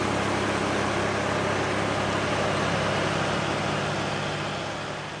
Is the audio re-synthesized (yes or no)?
no